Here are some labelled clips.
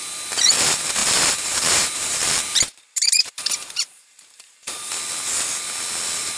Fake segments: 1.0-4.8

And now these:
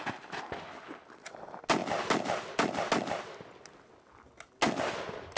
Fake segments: none

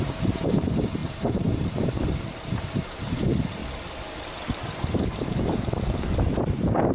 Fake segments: 0.0-3.6; 4.3-6.9

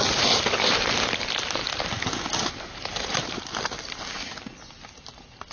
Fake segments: none

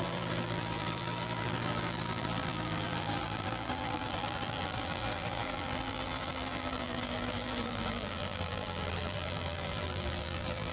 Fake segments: 0.0-10.7

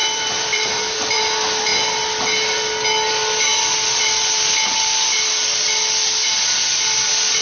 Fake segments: 0.0-1.2

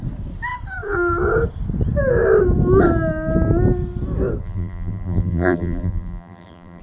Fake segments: 4.4-6.8